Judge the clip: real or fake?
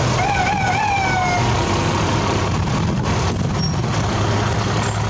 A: real